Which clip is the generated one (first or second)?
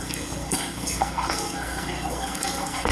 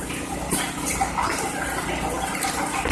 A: first